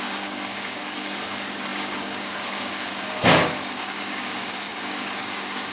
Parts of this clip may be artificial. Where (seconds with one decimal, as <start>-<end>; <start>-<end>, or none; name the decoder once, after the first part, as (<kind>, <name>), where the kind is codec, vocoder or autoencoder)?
0.0-2.9 (codec, DAC); 3.8-5.7